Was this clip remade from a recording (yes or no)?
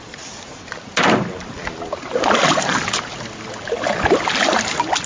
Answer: no